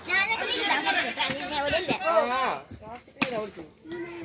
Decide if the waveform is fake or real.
real